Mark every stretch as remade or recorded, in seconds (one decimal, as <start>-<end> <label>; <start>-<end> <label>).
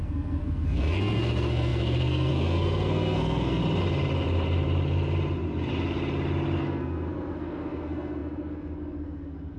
0.0-3.6 remade; 3.6-6.6 recorded; 6.6-9.6 remade